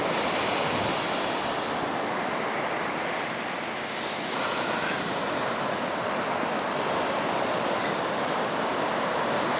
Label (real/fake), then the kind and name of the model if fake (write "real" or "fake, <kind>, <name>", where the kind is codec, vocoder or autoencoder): real